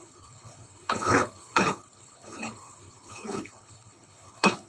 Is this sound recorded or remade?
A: remade